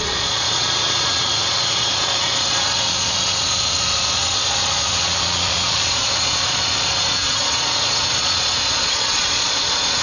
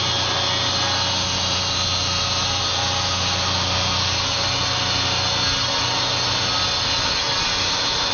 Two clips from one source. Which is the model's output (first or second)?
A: first